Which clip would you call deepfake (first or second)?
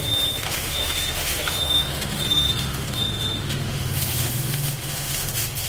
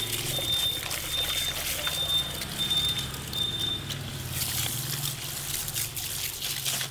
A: first